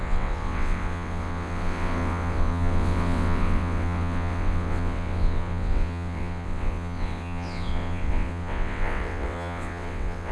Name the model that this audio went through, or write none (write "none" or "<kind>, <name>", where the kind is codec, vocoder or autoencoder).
vocoder, WaveNeXt